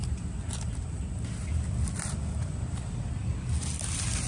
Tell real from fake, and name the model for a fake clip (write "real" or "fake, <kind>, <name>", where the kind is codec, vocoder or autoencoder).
real